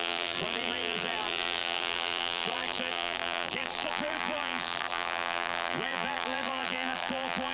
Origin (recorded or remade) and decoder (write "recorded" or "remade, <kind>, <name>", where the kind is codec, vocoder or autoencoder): remade, vocoder, BigVGAN v2